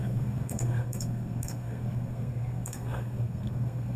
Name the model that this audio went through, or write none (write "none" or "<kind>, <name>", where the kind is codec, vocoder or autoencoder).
codec, SNAC